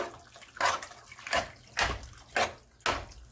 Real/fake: real